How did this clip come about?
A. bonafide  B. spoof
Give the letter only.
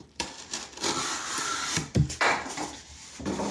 B